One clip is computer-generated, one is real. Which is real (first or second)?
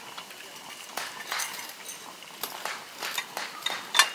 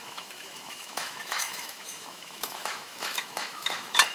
first